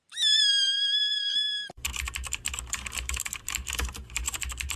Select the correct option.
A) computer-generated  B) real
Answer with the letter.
A